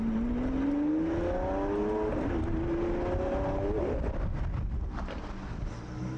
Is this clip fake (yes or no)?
no